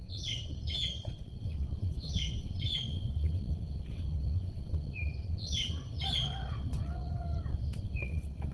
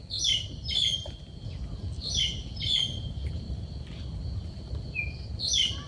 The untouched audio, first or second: second